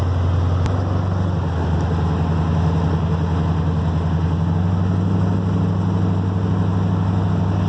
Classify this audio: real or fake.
real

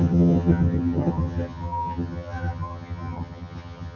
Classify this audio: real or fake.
fake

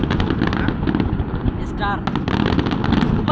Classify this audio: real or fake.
real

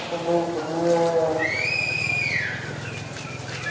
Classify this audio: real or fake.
real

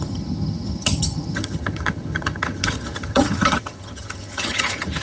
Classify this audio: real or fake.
fake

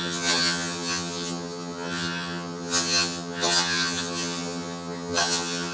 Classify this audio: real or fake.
fake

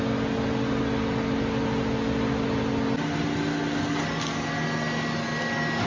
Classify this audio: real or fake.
real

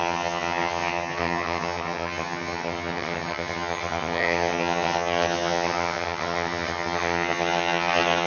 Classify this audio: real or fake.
fake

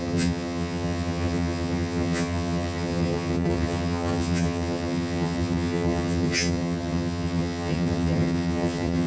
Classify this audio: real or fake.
fake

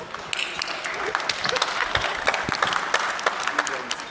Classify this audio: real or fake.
real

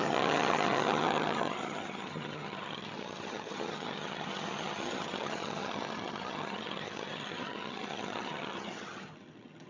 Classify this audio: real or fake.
fake